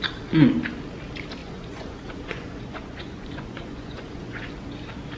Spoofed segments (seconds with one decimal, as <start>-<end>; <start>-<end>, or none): 1.4-4.5